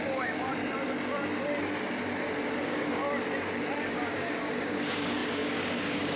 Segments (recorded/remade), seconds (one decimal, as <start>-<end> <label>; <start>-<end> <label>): 0.0-0.5 remade; 0.5-2.6 recorded; 2.6-3.0 remade; 3.0-3.9 recorded; 3.9-6.2 remade